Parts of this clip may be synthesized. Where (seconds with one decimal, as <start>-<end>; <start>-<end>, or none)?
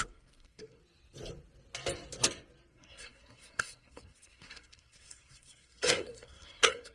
0.0-0.8; 2.7-6.9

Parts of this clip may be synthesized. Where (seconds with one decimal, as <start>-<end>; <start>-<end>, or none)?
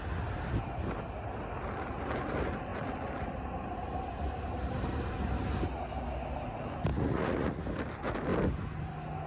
6.9-7.6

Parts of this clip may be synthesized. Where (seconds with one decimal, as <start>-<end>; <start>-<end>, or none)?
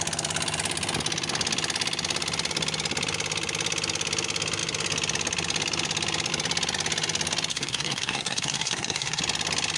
7.5-9.2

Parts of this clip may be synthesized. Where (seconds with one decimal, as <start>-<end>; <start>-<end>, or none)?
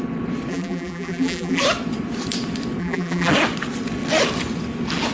0.5-1.6; 2.8-3.3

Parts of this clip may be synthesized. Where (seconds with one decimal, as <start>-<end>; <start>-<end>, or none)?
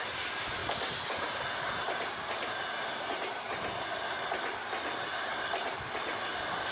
none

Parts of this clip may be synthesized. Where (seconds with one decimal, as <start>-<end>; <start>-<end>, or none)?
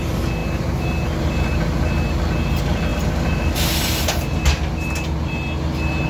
none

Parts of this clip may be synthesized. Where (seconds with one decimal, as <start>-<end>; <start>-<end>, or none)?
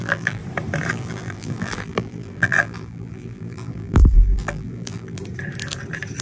0.0-0.4; 0.9-5.2